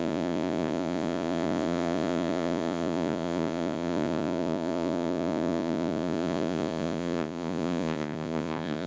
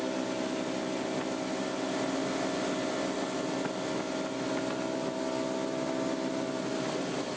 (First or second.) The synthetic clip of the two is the first